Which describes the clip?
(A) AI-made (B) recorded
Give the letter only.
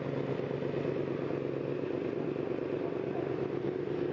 B